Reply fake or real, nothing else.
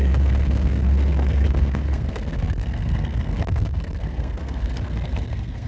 fake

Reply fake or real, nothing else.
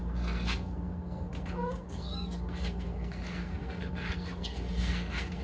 fake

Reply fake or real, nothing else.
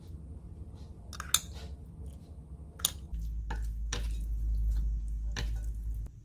real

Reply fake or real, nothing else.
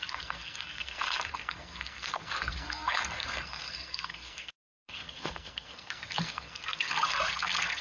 fake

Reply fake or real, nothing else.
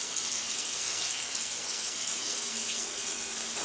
fake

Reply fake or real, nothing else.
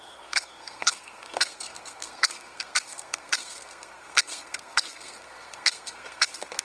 fake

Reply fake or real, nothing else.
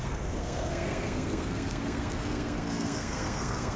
fake